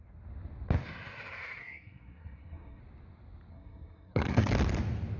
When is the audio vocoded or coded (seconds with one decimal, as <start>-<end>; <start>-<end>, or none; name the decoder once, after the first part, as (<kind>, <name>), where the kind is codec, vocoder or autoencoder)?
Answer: 1.6-2.8 (codec, SNAC); 3.5-4.5